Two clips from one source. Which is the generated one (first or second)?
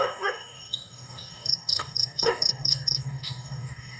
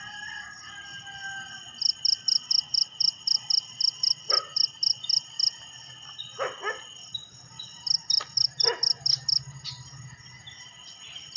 first